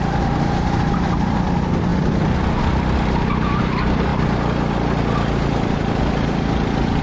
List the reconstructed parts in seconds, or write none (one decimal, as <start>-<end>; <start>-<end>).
none